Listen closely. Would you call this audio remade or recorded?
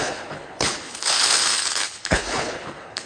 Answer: remade